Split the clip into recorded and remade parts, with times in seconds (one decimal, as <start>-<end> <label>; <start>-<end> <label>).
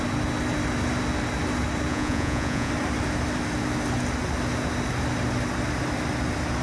0.0-1.9 recorded; 1.9-2.7 remade; 2.7-6.6 recorded